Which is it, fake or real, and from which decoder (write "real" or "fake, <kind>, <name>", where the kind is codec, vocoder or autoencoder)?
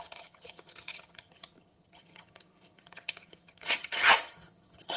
fake, vocoder, HiFi-GAN